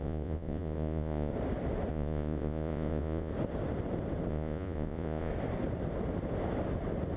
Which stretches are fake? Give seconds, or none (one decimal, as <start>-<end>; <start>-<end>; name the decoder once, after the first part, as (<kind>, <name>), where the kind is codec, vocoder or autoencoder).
0.0-1.3 (vocoder, Vocos); 1.9-3.3; 4.3-5.3